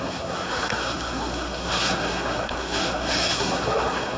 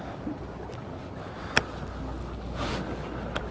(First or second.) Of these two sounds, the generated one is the first